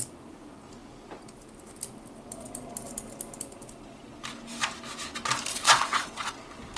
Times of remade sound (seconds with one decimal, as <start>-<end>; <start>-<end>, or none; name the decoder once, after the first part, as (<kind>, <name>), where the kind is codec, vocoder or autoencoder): 5.5-6.3 (vocoder, WaveNeXt)

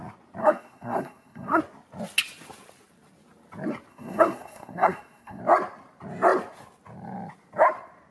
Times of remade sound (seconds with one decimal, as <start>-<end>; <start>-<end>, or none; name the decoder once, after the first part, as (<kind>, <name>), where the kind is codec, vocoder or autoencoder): 0.4-1.6 (codec, SNAC); 3.9-5.4

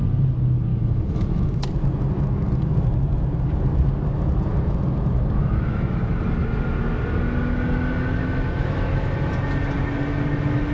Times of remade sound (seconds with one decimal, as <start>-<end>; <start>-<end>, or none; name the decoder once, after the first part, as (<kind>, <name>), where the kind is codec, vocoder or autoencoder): 0.7-1.6 (autoencoder, DAC-VAE); 5.4-6.2; 8.2-9.2

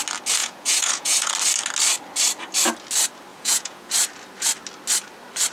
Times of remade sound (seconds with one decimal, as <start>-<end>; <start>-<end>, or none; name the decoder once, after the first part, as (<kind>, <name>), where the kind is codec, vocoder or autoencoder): 0.4-1.3 (vocoder, Vocos); 3.3-3.9

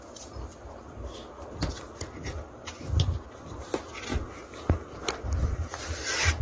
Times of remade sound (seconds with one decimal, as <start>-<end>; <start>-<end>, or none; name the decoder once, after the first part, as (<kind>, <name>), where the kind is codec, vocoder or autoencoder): 4.1-5.8 (vocoder, BigVGAN v2)

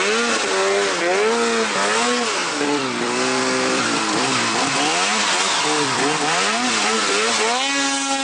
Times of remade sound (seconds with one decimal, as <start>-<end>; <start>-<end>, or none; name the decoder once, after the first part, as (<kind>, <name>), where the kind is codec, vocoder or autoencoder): 2.4-7.3 (vocoder, BigVGAN v2)

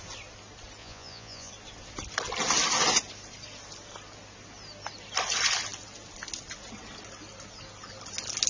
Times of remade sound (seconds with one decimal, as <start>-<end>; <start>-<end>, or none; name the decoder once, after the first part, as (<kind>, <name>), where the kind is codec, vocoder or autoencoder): 0.8-1.5 (vocoder, Vocos)

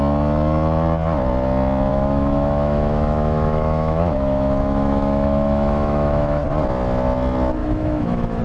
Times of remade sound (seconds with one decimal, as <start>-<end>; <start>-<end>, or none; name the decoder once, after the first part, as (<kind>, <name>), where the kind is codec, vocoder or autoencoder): 1.9-6.4 (autoencoder, DAC-VAE); 7.6-8.4